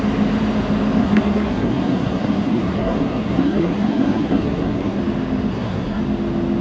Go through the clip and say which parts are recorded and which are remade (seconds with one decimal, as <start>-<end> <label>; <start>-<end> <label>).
0.0-1.0 recorded; 1.0-5.0 remade; 5.0-5.5 recorded; 5.5-6.0 remade; 6.0-6.6 recorded